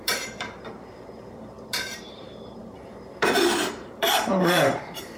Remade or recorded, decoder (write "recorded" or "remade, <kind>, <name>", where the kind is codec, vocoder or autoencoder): remade, vocoder, BigVGAN v2